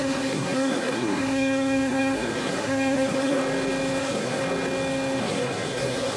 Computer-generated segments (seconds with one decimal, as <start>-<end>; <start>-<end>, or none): 0.0-3.4; 4.0-4.4; 5.2-6.2